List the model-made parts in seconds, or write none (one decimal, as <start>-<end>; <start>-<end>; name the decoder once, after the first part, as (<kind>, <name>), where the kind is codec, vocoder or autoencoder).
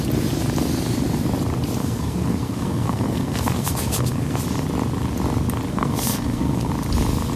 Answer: 1.8-4.4 (codec, SNAC); 5.7-6.7